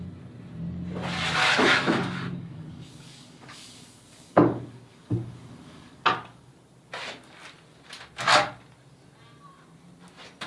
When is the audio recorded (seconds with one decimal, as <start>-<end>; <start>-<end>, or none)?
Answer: 0.0-1.4; 6.5-10.5